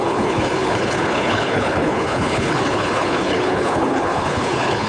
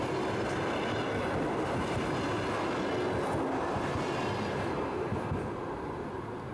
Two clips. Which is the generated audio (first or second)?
first